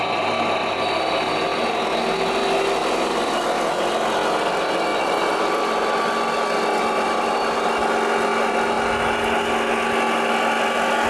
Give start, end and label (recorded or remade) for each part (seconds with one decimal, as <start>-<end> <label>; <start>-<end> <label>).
0.0-4.9 recorded; 4.9-5.4 remade; 5.4-11.1 recorded